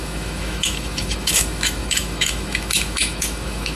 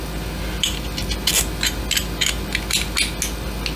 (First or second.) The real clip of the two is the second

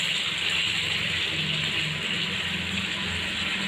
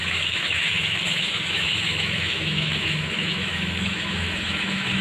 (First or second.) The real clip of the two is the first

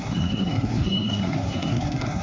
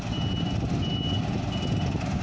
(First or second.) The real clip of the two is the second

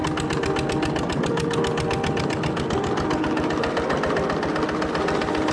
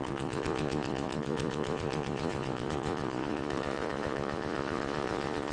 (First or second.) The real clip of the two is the first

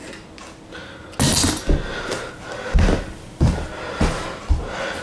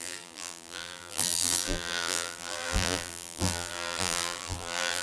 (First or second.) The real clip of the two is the first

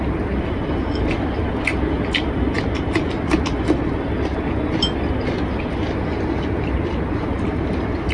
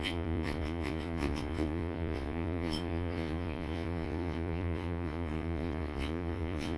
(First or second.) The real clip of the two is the first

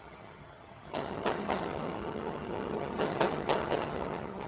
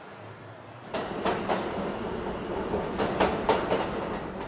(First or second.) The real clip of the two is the second